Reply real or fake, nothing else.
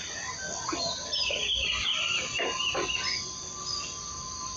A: real